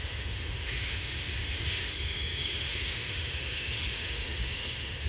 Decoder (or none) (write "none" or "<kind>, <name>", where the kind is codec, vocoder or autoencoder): autoencoder, DAC-VAE